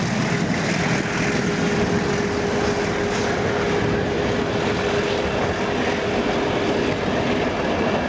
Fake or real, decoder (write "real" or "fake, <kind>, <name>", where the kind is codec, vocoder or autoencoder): real